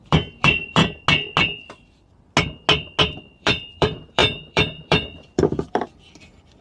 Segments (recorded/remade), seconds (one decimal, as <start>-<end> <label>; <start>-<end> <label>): 0.0-0.8 remade; 0.8-3.0 recorded; 3.0-6.6 remade